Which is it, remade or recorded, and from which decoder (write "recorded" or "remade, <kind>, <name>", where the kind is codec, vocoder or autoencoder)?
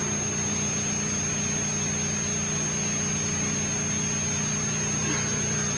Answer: recorded